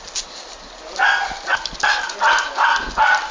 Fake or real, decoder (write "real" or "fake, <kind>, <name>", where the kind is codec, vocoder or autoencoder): real